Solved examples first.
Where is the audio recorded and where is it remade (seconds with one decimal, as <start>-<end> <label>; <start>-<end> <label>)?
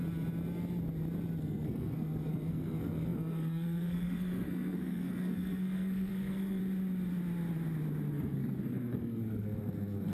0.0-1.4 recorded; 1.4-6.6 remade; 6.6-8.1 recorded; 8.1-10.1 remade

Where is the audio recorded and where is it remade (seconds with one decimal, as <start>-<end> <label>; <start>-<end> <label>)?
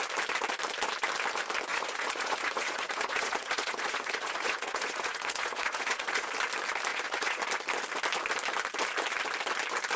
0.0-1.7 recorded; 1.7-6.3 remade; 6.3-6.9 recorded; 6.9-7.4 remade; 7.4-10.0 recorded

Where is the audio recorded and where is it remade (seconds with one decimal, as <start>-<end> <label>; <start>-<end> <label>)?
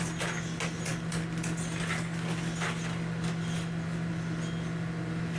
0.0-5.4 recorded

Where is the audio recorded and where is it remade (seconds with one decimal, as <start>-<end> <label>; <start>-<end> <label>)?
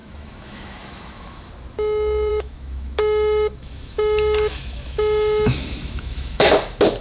0.0-1.5 remade; 1.5-2.3 recorded; 2.3-6.5 remade; 6.5-7.0 recorded